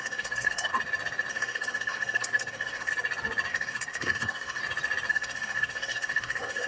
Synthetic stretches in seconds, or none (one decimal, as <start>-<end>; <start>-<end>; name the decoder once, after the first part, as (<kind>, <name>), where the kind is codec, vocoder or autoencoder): 0.0-0.7 (codec, SNAC); 1.3-2.9; 3.5-4.6; 5.1-6.7